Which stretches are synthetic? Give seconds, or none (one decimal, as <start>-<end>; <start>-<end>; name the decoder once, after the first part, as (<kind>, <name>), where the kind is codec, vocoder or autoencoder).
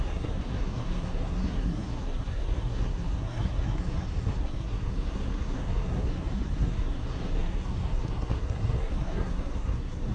0.0-10.1 (codec, SNAC)